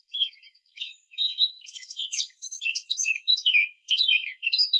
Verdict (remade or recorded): remade